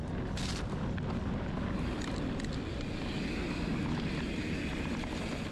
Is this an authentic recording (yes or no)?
yes